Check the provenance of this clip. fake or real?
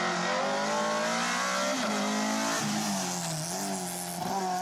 real